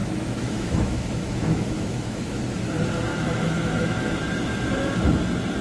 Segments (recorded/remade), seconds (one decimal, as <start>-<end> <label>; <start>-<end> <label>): 0.0-2.4 remade; 2.4-3.1 recorded; 3.1-4.2 remade; 4.2-5.6 recorded